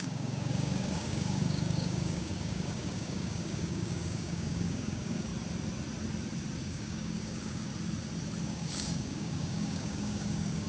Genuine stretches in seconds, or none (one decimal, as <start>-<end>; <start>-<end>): 5.3-6.6; 7.7-8.4